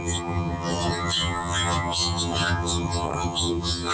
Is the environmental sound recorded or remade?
remade